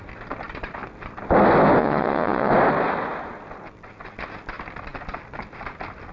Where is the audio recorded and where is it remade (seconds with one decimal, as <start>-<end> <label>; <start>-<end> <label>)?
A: 0.0-1.8 recorded; 1.8-2.5 remade; 2.5-6.1 recorded